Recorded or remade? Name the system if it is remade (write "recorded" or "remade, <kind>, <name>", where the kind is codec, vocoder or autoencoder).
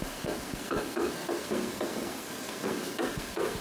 remade, codec, SNAC